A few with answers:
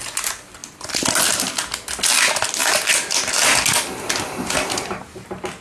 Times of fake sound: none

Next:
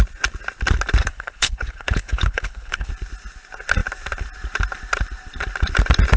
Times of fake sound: 1.0-2.9 (codec, HILCodec)

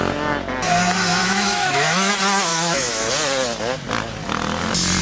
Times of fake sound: 1.2-2.1 (autoencoder, DAC-VAE); 2.5-3.1